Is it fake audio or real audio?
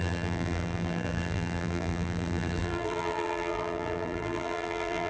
fake